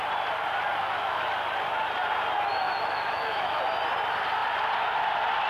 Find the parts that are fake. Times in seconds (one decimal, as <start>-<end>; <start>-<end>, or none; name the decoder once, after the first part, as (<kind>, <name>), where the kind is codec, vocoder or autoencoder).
0.7-1.3 (autoencoder, DAC-VAE); 2.5-3.6